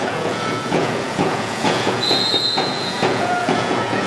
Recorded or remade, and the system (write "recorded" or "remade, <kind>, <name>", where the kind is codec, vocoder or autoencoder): remade, vocoder, Vocos